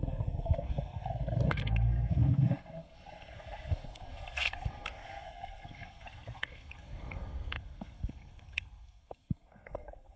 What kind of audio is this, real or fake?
fake